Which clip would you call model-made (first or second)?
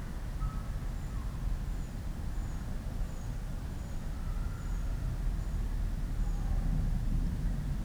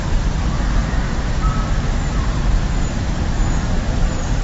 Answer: second